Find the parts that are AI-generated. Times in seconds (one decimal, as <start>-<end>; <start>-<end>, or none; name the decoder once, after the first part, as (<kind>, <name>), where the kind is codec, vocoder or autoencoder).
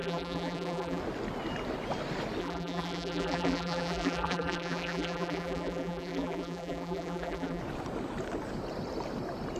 0.0-1.0 (vocoder, BigVGAN v2); 2.4-7.6